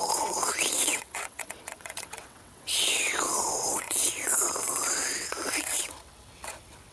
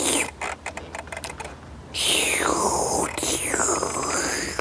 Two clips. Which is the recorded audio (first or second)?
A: second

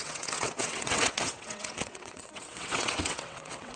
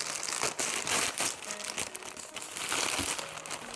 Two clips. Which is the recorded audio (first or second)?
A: second